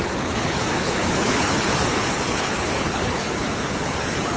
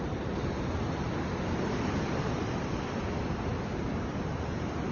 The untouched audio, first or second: second